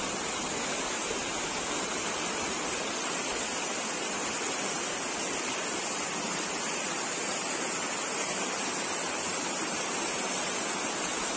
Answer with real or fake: real